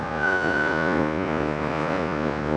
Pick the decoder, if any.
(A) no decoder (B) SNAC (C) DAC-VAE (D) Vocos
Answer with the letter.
D